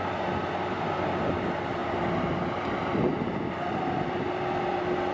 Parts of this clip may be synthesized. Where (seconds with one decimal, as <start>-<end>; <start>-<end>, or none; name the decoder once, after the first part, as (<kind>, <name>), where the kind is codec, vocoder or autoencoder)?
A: none